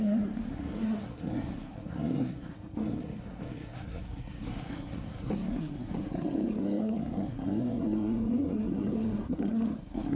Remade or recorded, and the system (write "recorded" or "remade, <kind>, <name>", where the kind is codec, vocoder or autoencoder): remade, codec, SNAC